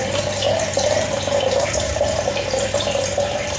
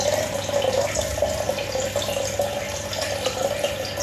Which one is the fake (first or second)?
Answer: first